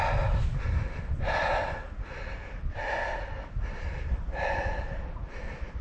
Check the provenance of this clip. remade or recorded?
recorded